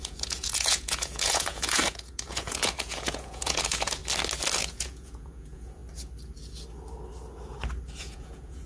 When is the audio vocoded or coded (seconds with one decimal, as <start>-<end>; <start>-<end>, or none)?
0.0-4.0; 4.6-5.8; 8.0-8.7